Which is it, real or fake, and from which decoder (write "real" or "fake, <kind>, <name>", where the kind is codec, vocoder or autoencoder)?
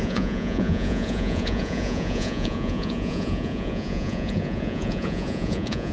fake, vocoder, Vocos